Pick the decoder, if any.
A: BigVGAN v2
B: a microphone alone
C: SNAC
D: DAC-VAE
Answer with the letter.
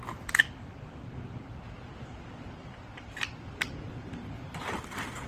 A